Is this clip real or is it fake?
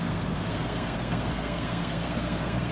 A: fake